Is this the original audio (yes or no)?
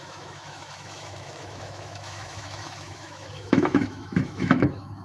no